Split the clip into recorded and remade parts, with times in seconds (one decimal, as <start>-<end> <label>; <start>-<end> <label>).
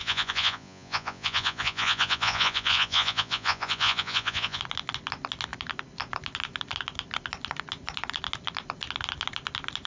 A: 0.0-4.6 remade; 4.6-9.9 recorded